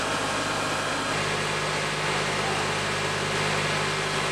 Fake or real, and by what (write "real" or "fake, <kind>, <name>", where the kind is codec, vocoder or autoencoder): real